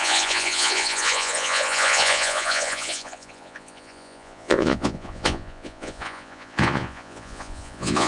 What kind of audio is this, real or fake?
fake